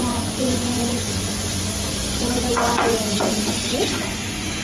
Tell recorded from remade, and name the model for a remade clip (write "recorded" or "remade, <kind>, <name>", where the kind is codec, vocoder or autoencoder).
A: remade, vocoder, Vocos